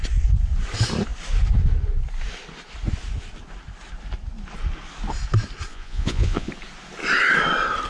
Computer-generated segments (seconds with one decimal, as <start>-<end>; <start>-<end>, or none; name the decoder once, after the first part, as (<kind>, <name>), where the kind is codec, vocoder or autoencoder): 5.7-6.5 (vocoder, Vocos)